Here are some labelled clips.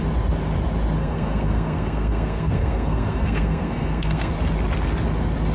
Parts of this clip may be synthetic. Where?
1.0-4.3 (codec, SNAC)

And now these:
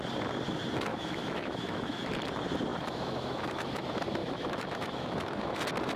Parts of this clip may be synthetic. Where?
0.9-2.1 (autoencoder, DAC-VAE); 2.7-3.8; 4.2-5.6